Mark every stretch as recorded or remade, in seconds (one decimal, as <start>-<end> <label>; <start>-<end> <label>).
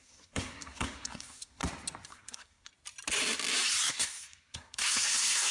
0.0-1.6 remade; 1.6-2.1 recorded; 2.1-2.7 remade; 2.7-3.9 recorded; 3.9-5.5 remade